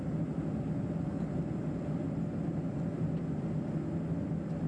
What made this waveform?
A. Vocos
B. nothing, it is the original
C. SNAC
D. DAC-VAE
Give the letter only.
B